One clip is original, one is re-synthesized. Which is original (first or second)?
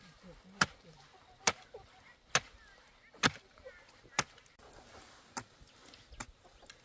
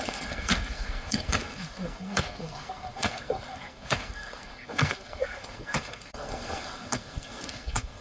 first